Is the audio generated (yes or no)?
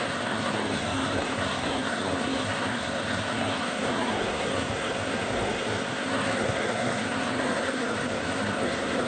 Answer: yes